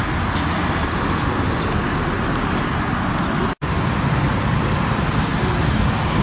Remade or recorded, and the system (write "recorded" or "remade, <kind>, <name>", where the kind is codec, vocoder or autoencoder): recorded